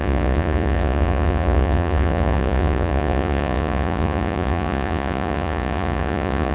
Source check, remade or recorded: remade